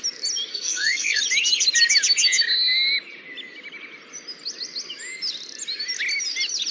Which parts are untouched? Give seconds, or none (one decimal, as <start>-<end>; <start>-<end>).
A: 0.0-0.5; 1.2-6.7